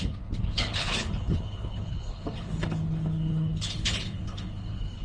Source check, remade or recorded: remade